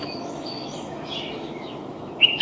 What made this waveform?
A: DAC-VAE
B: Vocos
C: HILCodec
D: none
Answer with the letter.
A